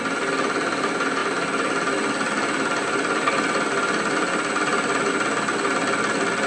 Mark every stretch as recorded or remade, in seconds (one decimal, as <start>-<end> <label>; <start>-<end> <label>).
0.0-6.5 recorded